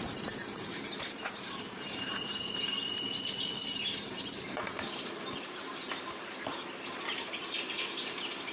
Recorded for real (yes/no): no